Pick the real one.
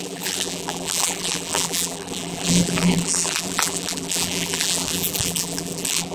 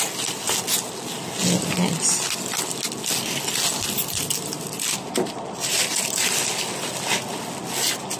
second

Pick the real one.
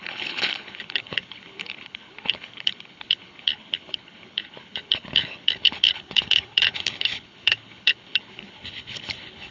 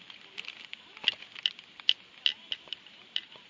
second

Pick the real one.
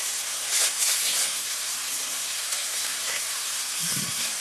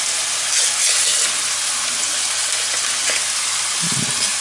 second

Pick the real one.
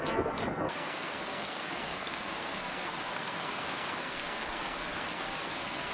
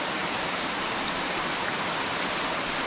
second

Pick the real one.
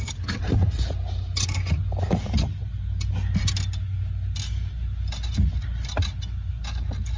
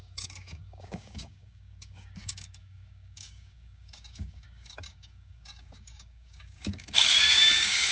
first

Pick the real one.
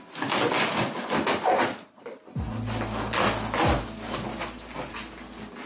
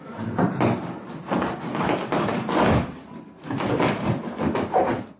first